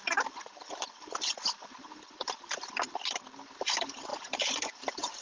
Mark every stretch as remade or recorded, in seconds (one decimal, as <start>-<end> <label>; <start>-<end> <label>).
0.0-0.6 remade; 0.6-4.1 recorded; 4.1-5.2 remade